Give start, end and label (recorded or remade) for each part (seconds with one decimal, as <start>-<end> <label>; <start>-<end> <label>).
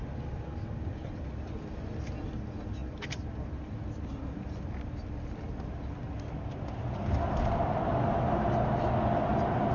0.0-9.7 recorded